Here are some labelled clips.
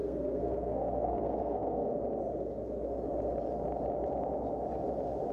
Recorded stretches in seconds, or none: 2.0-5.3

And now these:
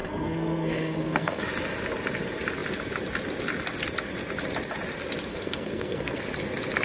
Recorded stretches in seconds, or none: 1.4-5.3; 6.2-6.8

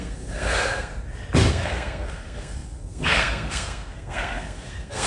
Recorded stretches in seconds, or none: 0.9-1.5

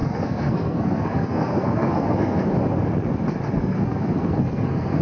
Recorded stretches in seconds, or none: 2.5-3.5